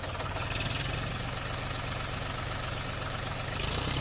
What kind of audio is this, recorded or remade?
recorded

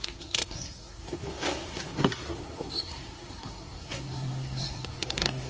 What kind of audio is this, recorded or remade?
remade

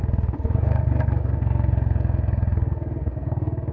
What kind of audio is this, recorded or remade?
remade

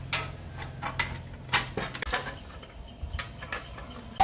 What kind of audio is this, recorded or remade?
recorded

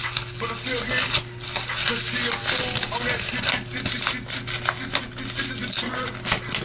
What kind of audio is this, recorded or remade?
recorded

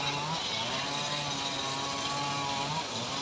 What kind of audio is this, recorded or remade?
recorded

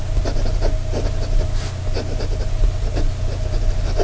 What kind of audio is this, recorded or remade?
recorded